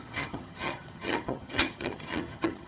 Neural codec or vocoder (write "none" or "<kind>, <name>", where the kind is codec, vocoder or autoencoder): vocoder, HiFi-GAN